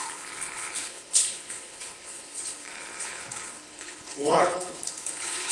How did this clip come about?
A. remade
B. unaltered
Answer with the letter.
A